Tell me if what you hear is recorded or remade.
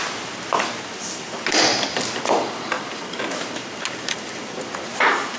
recorded